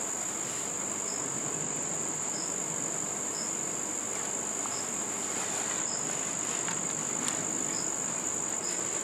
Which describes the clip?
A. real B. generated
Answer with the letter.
A